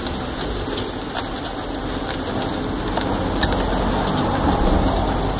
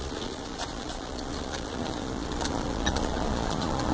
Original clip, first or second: first